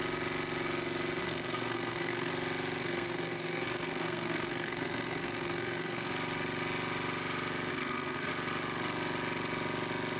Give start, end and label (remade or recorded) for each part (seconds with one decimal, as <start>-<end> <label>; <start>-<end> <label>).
0.0-1.2 recorded; 1.2-2.3 remade; 2.3-2.8 recorded; 2.8-6.1 remade; 6.1-7.7 recorded; 7.7-8.3 remade; 8.3-10.2 recorded